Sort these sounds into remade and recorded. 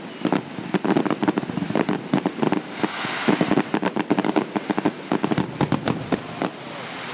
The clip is recorded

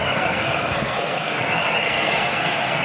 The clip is remade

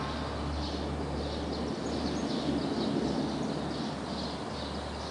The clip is recorded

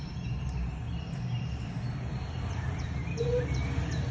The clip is remade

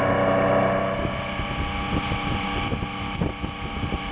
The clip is recorded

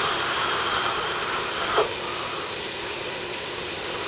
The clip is recorded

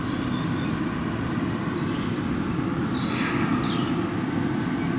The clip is recorded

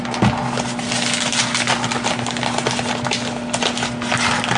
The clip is recorded